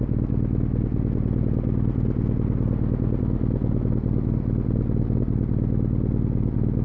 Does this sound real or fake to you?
real